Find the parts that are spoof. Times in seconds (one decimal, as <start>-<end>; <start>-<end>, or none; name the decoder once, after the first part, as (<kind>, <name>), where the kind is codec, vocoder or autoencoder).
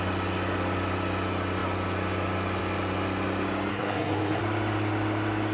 3.7-4.4 (codec, SNAC)